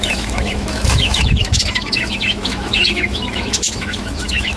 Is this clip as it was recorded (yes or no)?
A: no